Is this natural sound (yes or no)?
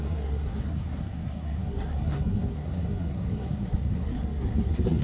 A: no